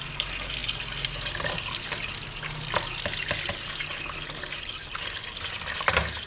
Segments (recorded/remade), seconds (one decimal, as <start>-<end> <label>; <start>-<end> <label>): 0.0-6.3 recorded